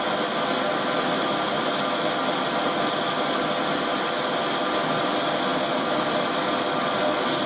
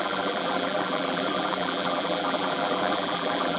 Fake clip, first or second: second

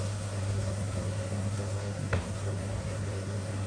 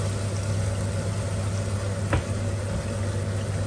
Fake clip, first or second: first